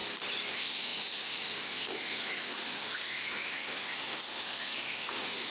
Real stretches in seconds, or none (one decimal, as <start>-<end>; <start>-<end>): 0.0-0.5